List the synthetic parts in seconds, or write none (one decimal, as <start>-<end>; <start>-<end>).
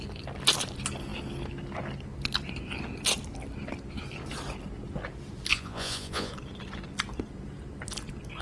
5.5-6.3